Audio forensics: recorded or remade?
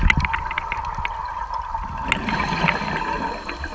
recorded